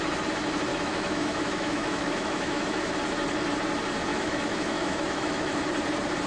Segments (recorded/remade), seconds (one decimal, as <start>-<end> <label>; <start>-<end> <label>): 0.0-0.7 recorded; 0.7-2.9 remade; 2.9-4.1 recorded; 4.1-5.6 remade; 5.6-6.3 recorded